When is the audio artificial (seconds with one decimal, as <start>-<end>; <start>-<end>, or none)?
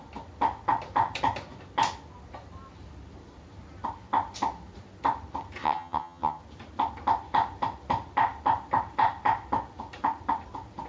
5.6-6.4